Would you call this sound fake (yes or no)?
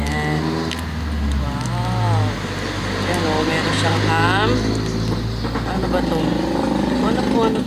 no